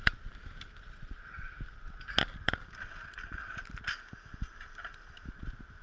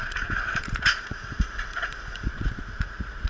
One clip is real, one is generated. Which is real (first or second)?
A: first